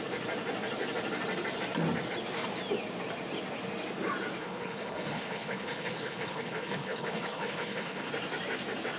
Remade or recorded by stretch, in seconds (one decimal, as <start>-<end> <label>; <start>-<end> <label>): 0.0-4.4 recorded; 4.4-8.1 remade; 8.1-9.0 recorded